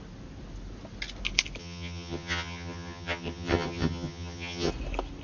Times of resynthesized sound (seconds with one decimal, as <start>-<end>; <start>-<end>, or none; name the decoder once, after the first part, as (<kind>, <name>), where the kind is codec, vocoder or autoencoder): 1.6-4.7 (vocoder, HiFi-GAN)